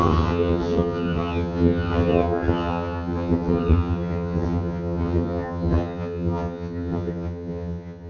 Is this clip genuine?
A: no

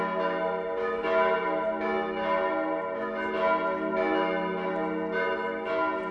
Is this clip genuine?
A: yes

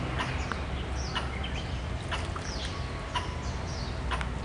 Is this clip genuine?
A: yes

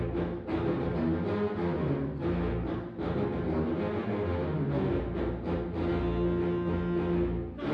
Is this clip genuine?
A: yes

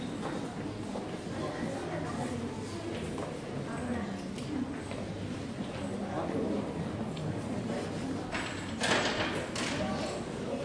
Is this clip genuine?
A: yes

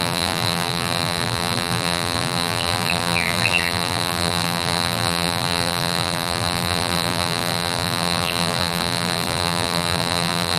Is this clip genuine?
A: no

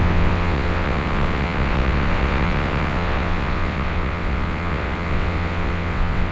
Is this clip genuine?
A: no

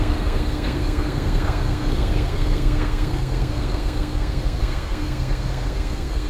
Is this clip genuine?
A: no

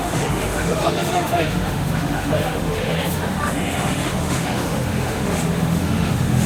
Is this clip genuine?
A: no